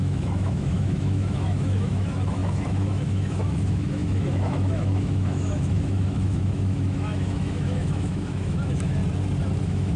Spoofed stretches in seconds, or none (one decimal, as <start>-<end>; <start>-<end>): 0.0-9.0; 9.6-10.0